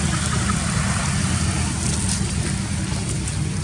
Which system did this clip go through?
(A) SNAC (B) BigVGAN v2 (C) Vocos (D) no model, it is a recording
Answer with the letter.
D